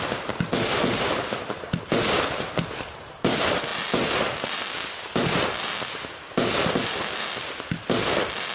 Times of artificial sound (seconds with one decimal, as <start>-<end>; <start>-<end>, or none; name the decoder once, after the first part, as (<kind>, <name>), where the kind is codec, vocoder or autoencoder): none